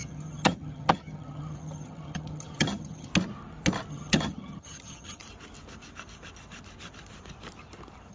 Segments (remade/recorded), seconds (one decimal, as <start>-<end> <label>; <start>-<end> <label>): 0.0-3.1 remade; 3.1-3.9 recorded; 3.9-5.2 remade; 5.2-8.1 recorded